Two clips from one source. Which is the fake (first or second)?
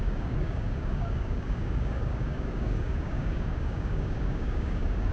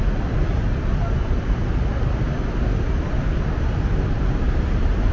first